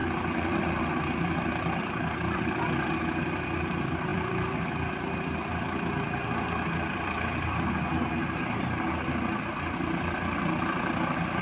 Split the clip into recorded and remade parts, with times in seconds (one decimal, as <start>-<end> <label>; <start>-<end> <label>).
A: 0.0-11.4 remade